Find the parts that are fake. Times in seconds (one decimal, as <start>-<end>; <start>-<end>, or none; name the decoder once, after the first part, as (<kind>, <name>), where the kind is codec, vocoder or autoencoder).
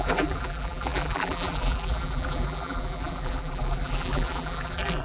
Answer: 0.0-5.0 (vocoder, BigVGAN v2)